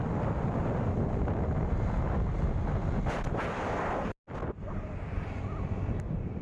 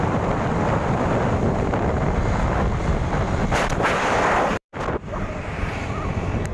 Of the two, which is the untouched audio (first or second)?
first